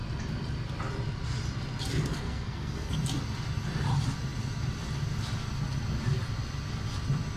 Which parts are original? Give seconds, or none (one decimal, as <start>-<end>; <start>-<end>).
0.0-2.1; 2.9-7.4